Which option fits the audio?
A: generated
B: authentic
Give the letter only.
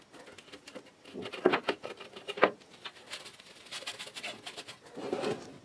B